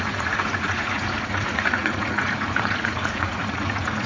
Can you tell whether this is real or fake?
fake